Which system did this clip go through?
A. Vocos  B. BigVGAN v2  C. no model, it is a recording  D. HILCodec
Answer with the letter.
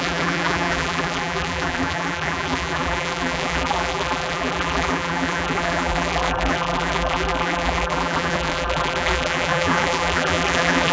B